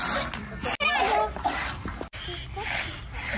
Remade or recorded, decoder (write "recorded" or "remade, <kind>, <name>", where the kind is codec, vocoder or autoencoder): recorded